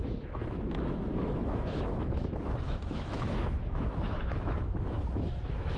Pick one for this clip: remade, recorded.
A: remade